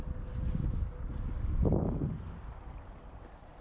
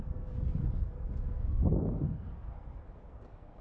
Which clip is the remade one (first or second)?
second